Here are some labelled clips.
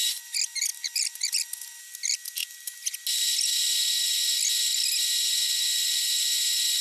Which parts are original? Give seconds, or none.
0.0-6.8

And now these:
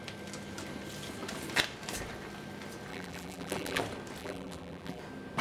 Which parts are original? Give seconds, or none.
0.0-2.9; 3.8-4.2; 5.0-5.4

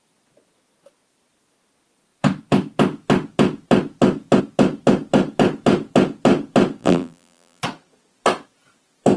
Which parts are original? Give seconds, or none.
0.0-6.8; 7.6-9.2